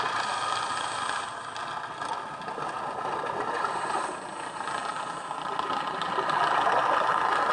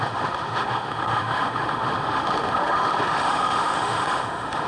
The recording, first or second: first